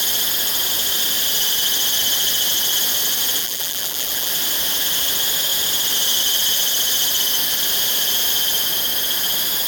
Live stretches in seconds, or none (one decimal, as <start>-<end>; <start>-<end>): 0.0-3.4; 4.3-9.7